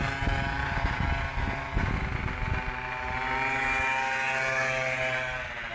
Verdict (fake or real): real